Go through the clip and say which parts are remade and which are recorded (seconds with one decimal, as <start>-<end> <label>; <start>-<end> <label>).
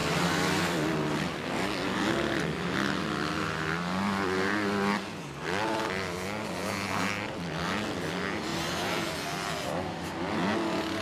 0.0-1.5 remade; 1.5-11.0 recorded